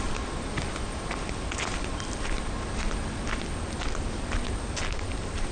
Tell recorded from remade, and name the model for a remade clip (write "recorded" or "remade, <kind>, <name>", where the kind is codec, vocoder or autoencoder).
recorded